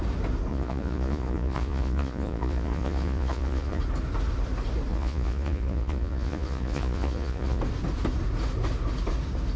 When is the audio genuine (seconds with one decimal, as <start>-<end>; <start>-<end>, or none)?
0.0-0.5; 3.8-4.9; 7.6-9.6